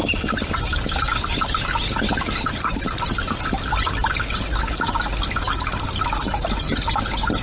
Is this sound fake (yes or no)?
no